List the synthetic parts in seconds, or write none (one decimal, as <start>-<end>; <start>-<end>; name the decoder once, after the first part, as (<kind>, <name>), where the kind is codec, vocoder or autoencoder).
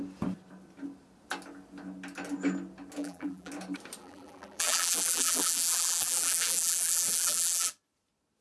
3.0-3.5 (vocoder, BigVGAN v2); 4.0-7.7